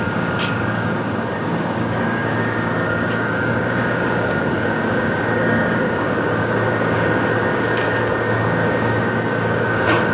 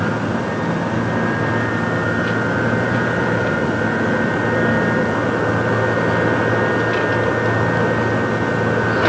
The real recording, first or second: second